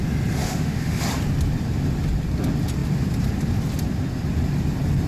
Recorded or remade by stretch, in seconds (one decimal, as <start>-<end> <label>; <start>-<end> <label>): 0.0-0.4 recorded; 0.4-1.0 remade; 1.0-5.1 recorded